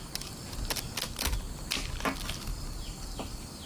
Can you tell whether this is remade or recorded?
recorded